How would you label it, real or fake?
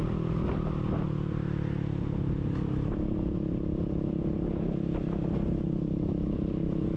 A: real